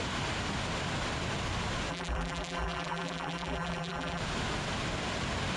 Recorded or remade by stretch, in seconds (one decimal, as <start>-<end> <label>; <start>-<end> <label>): 0.0-1.9 recorded; 1.9-4.2 remade; 4.2-5.6 recorded